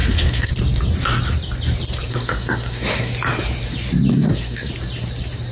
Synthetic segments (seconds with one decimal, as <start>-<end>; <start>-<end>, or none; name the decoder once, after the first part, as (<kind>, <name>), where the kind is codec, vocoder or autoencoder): 0.0-0.5 (codec, SNAC); 2.1-3.1; 4.1-4.7